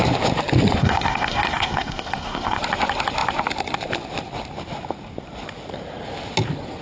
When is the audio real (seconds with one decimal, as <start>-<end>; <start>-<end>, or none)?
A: 0.0-0.8; 2.6-6.8